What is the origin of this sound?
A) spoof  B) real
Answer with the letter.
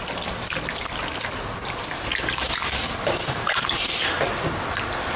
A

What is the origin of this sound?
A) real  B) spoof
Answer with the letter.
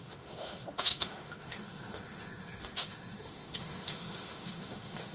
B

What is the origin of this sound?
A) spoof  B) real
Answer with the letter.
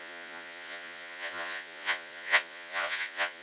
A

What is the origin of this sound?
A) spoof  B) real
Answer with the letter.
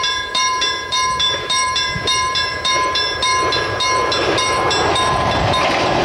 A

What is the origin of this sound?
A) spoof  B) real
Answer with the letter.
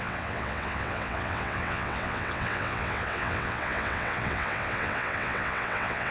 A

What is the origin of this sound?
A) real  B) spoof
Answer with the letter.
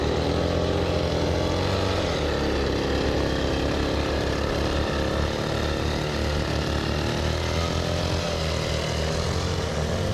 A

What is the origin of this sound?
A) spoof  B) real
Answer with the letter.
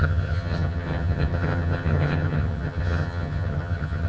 A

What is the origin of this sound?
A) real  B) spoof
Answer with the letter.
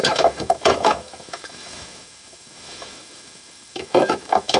B